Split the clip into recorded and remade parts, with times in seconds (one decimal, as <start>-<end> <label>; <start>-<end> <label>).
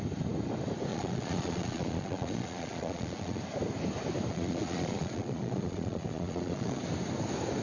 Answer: 0.0-0.9 recorded; 0.9-3.4 remade; 3.4-4.3 recorded; 4.3-6.8 remade; 6.8-7.6 recorded